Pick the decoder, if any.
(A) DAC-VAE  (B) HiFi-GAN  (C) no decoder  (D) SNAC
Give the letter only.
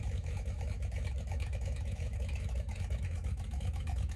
A